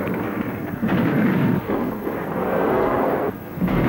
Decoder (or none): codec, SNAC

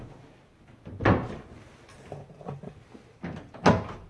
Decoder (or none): none